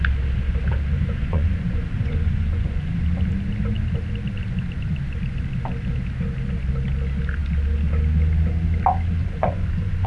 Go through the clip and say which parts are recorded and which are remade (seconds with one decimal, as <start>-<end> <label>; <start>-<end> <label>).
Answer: 0.0-0.9 recorded; 0.9-3.0 remade; 3.0-9.2 recorded; 9.2-10.1 remade